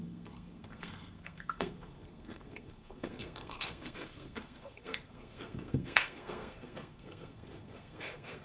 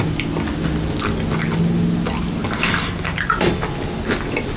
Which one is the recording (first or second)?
second